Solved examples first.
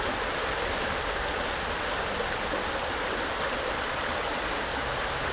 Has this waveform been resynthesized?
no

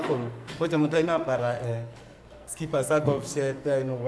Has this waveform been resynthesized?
yes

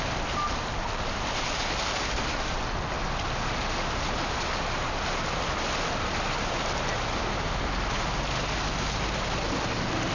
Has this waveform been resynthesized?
no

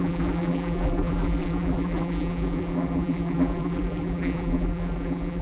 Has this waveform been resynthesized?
yes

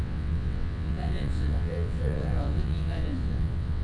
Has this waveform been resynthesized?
yes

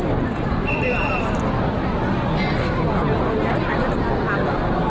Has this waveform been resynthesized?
no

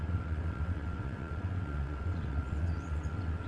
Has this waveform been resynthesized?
yes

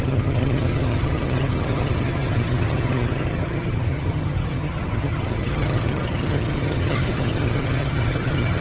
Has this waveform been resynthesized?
yes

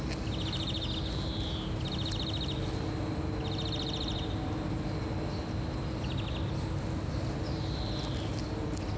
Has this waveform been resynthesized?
no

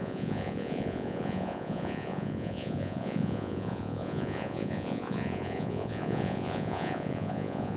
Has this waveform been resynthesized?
yes